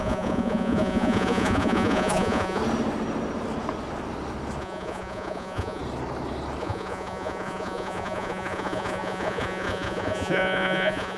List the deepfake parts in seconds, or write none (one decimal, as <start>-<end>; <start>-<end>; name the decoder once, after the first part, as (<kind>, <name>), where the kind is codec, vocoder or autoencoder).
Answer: 0.0-2.6 (vocoder, Vocos); 4.6-5.8; 6.6-11.2